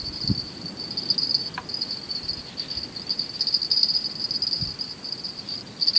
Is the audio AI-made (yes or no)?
no